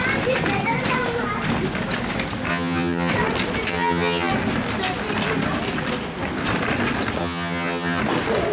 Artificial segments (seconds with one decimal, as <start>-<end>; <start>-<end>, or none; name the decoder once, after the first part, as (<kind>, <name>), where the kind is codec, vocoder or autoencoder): 2.5-3.1 (vocoder, HiFi-GAN); 3.7-4.3; 7.2-8.0